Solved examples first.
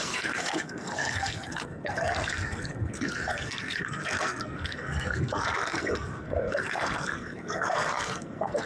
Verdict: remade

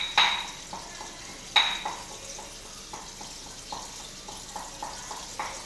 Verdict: recorded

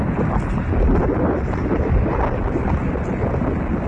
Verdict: recorded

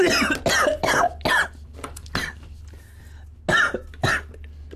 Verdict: recorded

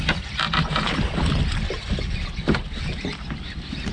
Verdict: recorded